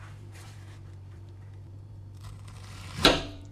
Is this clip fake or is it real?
fake